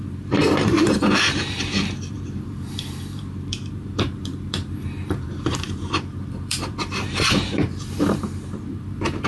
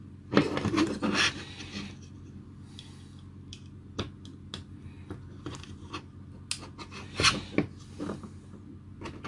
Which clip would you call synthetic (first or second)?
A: first